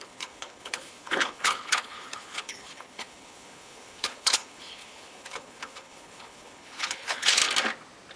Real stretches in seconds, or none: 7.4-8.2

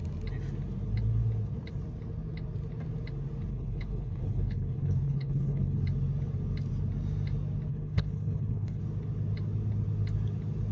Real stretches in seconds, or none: 0.0-3.5; 5.8-7.7; 8.8-10.7

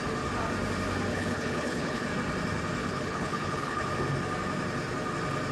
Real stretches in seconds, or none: 0.0-1.1; 2.1-2.8; 3.9-5.5

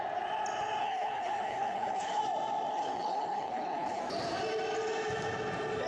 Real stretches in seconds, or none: 0.0-0.8; 2.2-2.7; 4.0-5.9